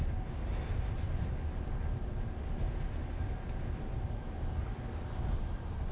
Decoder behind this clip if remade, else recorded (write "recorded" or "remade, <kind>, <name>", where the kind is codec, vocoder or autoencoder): recorded